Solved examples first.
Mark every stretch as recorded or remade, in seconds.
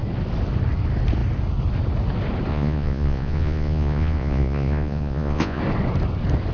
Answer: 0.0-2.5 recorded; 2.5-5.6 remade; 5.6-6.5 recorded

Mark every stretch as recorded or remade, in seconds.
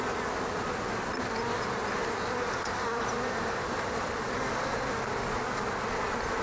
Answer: 0.0-6.4 recorded